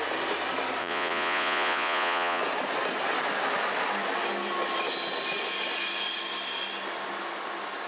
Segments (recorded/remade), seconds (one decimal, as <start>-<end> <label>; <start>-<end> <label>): 0.0-0.8 recorded; 0.8-2.4 remade; 2.4-7.9 recorded